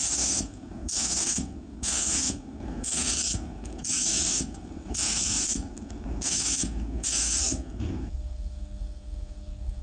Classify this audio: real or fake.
fake